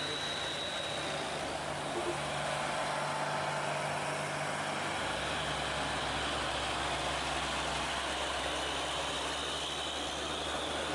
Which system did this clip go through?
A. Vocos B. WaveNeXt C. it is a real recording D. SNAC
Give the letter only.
C